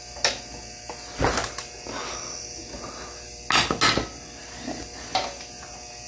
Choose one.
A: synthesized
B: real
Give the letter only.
B